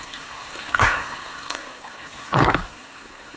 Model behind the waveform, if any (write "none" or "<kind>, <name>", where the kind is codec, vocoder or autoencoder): codec, SNAC